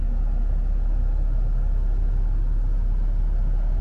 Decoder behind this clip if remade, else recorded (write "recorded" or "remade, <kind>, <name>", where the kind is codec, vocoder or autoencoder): recorded